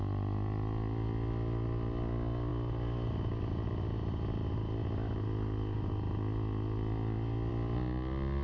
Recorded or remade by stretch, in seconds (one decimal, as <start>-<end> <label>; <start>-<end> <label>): 0.0-8.4 recorded